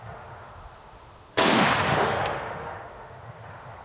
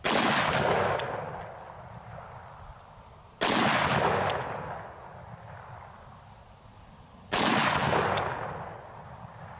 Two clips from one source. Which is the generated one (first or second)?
first